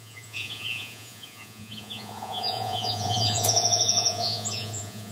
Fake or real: fake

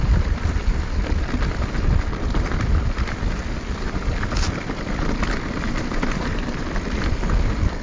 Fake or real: real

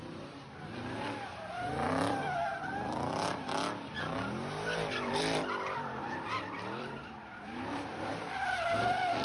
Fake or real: fake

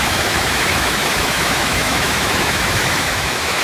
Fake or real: fake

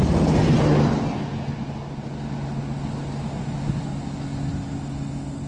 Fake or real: real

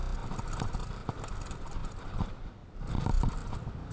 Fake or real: real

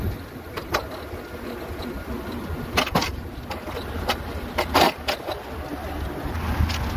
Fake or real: real